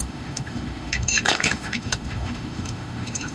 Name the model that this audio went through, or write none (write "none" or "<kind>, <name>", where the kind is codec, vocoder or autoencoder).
autoencoder, DAC-VAE